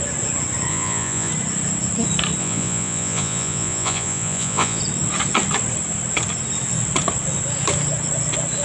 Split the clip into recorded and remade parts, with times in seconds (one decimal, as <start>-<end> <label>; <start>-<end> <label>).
0.0-0.7 recorded; 0.7-1.3 remade; 1.3-2.4 recorded; 2.4-4.8 remade; 4.8-8.6 recorded